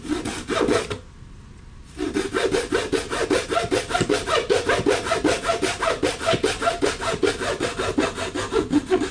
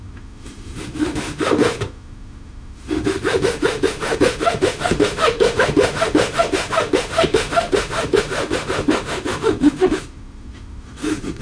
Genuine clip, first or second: first